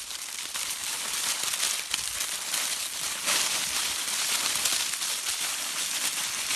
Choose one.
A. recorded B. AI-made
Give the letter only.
A